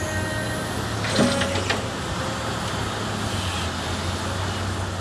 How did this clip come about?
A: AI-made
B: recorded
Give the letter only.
B